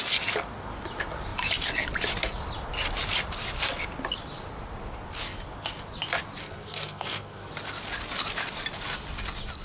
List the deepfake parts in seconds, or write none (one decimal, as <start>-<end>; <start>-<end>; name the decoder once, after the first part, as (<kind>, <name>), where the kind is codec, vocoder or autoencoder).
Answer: 6.4-7.5 (codec, SNAC)